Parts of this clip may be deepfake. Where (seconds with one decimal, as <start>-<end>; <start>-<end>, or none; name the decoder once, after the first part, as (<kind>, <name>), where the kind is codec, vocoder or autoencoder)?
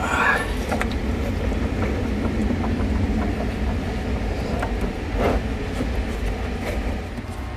none